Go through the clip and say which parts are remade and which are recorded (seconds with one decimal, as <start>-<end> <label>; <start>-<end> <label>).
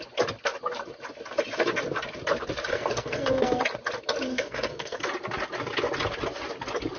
0.0-2.7 recorded; 2.7-3.6 remade; 3.6-4.3 recorded; 4.3-5.1 remade; 5.1-7.0 recorded